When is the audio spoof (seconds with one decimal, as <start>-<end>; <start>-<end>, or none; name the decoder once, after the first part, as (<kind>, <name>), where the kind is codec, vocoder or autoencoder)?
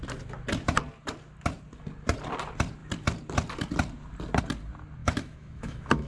5.0-6.1 (autoencoder, DAC-VAE)